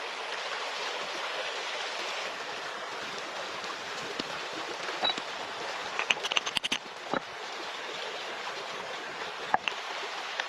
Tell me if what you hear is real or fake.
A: real